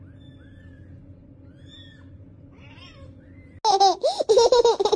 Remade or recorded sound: recorded